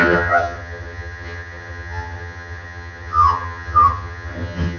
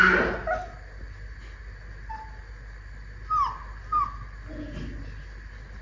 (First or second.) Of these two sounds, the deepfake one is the first